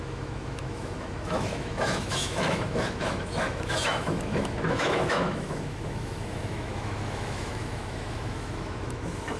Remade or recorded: remade